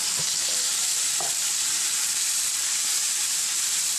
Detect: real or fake fake